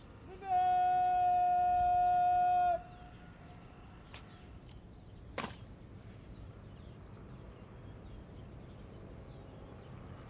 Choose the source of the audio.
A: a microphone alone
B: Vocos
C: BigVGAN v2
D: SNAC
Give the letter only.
A